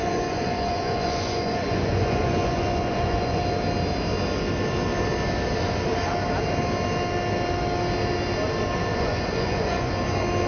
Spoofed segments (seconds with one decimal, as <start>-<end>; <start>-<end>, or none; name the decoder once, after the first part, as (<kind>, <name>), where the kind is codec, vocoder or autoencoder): 0.0-3.4 (vocoder, Vocos); 8.9-9.9